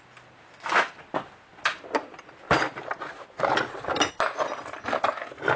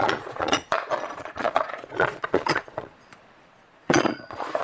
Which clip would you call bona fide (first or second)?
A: first